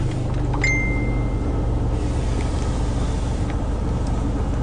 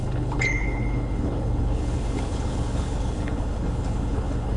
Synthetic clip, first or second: second